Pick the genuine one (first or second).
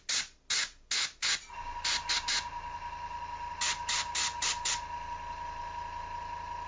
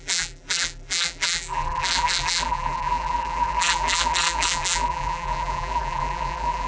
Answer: first